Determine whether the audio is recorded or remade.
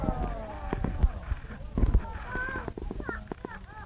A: recorded